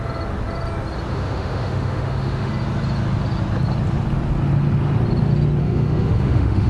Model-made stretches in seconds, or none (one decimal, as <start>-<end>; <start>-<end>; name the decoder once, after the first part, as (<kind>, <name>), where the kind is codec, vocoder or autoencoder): 1.1-2.5 (autoencoder, DAC-VAE); 5.6-6.7